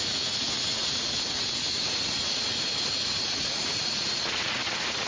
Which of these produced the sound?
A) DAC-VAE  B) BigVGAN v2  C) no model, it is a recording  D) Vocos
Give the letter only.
D